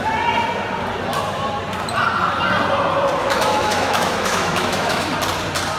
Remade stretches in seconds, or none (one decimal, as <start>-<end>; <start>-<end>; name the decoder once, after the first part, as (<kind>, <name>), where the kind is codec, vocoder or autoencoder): 3.2-5.1 (autoencoder, DAC-VAE)